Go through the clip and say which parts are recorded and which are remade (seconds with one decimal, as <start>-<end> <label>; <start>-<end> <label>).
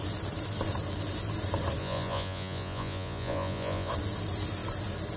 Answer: 0.0-1.8 recorded; 1.8-3.9 remade; 3.9-5.2 recorded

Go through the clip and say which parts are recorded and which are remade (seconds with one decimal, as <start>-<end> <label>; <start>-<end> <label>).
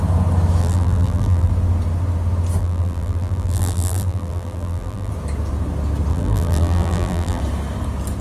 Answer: 0.0-0.6 recorded; 0.6-1.5 remade; 1.5-2.6 recorded; 2.6-5.1 remade; 5.1-6.1 recorded; 6.1-7.4 remade; 7.4-8.2 recorded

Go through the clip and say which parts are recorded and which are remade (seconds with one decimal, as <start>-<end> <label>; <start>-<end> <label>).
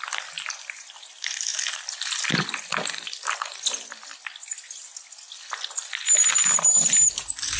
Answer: 0.0-7.6 recorded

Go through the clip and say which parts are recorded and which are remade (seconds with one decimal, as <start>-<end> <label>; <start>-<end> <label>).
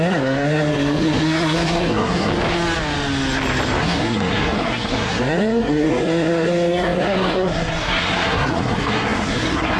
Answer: 0.0-2.3 remade; 2.3-3.8 recorded; 3.8-9.8 remade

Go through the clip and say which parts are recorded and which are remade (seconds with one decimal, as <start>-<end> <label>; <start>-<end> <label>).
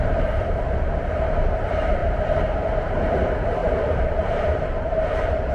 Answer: 0.0-2.0 remade; 2.0-2.6 recorded; 2.6-5.5 remade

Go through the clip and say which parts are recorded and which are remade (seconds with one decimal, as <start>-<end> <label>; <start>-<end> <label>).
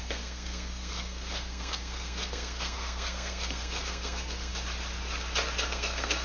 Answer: 0.0-4.5 remade; 4.5-5.6 recorded; 5.6-6.2 remade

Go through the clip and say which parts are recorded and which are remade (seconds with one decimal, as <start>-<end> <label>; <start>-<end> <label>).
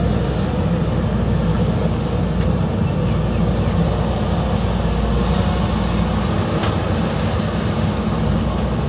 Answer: 0.0-1.5 recorded; 1.5-2.1 remade; 2.1-8.9 recorded